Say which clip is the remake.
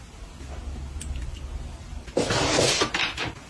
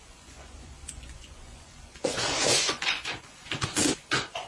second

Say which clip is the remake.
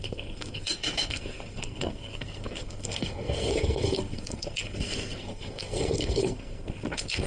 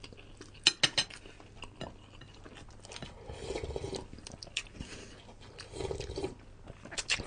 first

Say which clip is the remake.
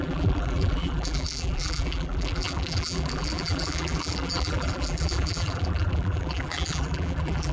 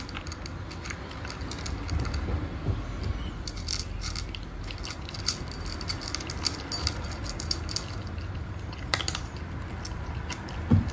first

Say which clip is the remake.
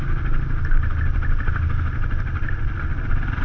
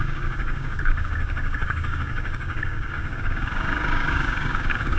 second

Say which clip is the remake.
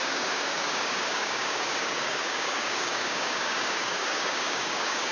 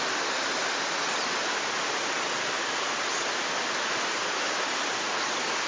first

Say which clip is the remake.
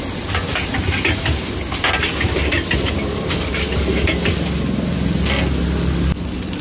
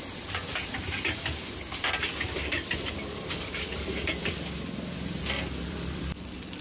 second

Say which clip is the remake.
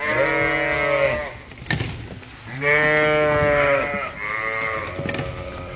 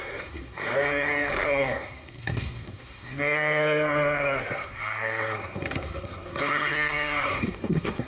second